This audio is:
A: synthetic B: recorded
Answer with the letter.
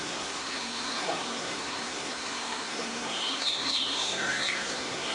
A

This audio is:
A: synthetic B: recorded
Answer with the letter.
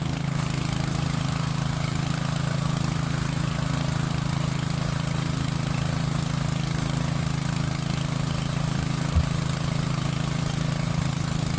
B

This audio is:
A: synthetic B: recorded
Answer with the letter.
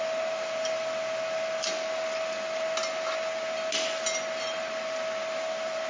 B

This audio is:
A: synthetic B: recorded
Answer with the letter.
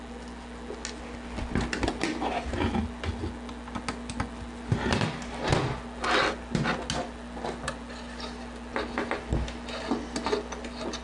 B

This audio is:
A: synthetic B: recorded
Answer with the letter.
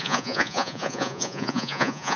A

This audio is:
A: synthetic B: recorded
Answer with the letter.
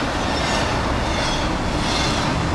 B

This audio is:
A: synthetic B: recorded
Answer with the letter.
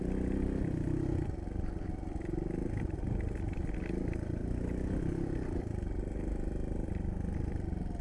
B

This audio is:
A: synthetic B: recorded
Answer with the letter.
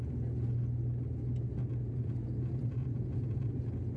B